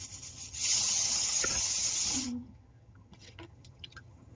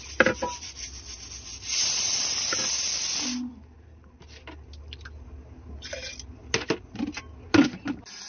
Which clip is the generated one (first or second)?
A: first